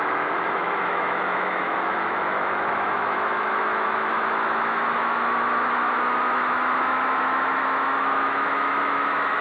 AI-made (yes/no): yes